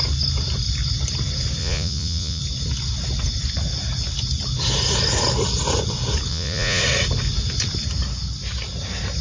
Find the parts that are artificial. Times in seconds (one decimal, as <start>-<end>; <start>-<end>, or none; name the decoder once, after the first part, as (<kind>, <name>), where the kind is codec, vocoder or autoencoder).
1.6-2.4 (vocoder, Vocos); 6.3-6.8